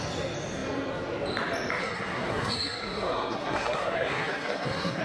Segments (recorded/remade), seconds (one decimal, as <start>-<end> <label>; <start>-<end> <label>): 0.0-1.8 recorded; 1.8-5.0 remade